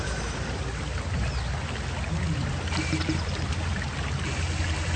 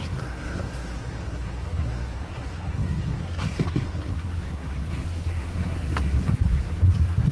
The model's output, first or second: second